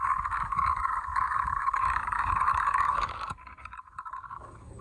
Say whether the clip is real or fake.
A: fake